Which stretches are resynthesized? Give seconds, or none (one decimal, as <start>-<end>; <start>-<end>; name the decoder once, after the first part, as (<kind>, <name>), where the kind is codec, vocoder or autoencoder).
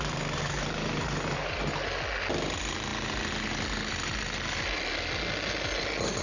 none